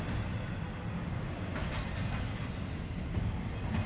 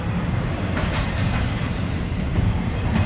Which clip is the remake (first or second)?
second